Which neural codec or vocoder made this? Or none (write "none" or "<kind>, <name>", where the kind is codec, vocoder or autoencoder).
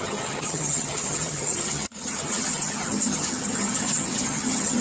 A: vocoder, HiFi-GAN